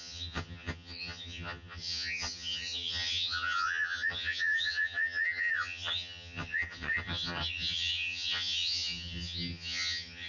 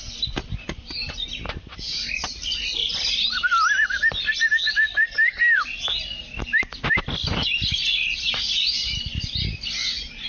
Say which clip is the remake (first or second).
first